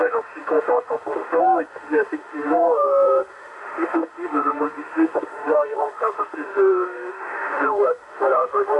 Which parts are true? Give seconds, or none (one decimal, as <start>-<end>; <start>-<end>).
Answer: none